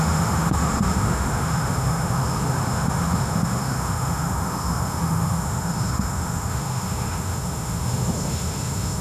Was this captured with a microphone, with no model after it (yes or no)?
no